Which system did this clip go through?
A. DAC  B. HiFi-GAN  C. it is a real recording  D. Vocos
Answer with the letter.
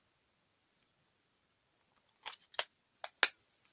C